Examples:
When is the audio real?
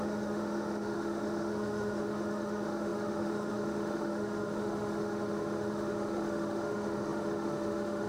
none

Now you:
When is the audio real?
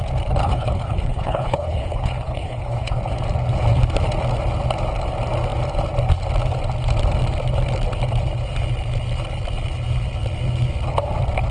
0.0-0.4; 3.0-11.5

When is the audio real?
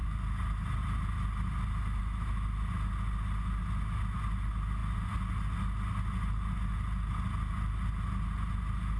0.0-9.0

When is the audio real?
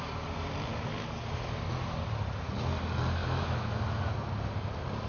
0.0-3.2; 3.8-5.1